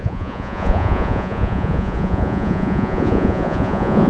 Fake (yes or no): yes